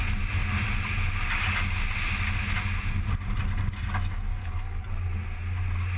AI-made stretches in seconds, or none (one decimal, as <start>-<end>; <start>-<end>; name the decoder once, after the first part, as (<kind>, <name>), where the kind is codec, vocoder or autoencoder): 4.3-4.9 (codec, DAC)